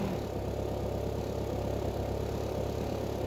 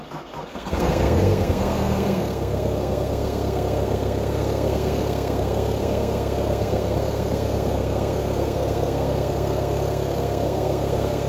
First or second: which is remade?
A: second